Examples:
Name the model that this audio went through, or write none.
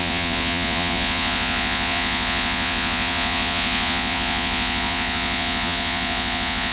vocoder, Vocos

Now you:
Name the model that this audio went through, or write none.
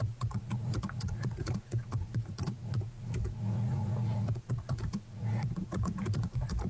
vocoder, Vocos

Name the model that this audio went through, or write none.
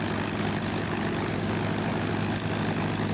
none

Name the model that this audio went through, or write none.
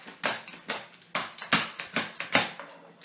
none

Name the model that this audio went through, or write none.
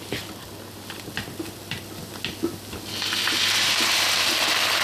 none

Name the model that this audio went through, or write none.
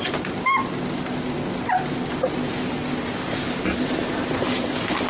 none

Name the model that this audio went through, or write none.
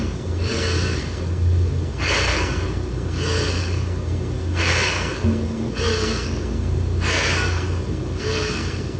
codec, SNAC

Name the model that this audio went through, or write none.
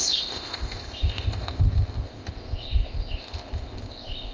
codec, ZipCodec